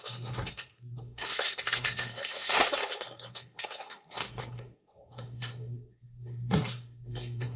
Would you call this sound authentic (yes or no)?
no